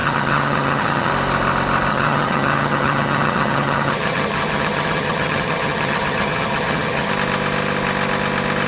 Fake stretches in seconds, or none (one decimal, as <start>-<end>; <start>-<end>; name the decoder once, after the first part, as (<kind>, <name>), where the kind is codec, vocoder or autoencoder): 0.0-1.1 (vocoder, HiFi-GAN); 1.9-7.1

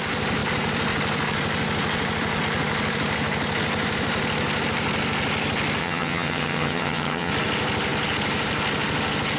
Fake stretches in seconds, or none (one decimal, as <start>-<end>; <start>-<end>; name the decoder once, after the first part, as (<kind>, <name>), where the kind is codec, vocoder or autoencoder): 5.8-7.3 (vocoder, HiFi-GAN)

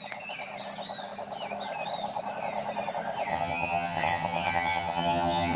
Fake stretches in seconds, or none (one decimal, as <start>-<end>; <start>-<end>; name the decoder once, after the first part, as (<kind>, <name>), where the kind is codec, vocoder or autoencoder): 3.3-5.6 (vocoder, HiFi-GAN)

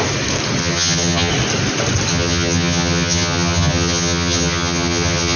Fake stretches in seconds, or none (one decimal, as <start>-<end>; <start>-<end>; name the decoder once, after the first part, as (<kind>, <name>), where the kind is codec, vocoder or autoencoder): 0.6-1.3 (vocoder, HiFi-GAN); 2.1-5.4

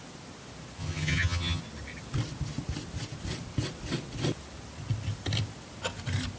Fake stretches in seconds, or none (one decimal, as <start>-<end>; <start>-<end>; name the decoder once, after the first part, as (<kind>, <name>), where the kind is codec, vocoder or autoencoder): 0.8-1.6 (vocoder, HiFi-GAN)

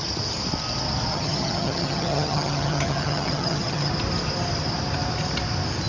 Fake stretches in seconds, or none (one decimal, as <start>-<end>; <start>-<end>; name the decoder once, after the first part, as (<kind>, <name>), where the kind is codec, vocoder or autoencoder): 1.1-3.9 (vocoder, HiFi-GAN)